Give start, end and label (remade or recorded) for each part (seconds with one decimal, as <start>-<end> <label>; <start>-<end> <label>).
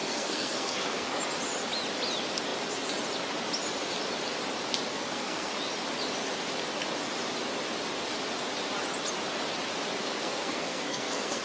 0.0-1.2 remade; 1.2-4.9 recorded; 4.9-5.5 remade; 5.5-10.0 recorded; 10.0-11.4 remade